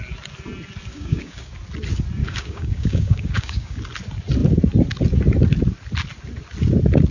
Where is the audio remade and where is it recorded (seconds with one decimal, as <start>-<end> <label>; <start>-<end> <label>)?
0.0-0.9 recorded; 0.9-1.5 remade; 1.5-2.2 recorded; 2.2-3.8 remade; 3.8-7.1 recorded